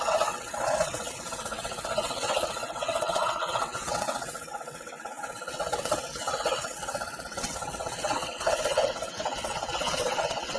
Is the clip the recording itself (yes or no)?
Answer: no